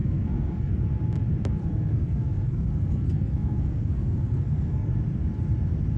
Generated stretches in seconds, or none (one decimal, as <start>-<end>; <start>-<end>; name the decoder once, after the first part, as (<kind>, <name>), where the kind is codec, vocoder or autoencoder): 0.0-0.7 (codec, SNAC); 1.6-4.9